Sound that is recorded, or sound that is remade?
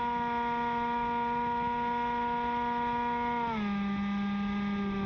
recorded